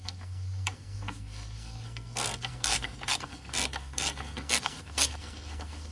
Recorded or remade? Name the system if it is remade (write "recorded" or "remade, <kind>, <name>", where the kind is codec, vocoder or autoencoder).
remade, codec, SNAC